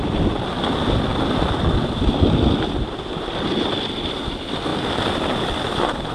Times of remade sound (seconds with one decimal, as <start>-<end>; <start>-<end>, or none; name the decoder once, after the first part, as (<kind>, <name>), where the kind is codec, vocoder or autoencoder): none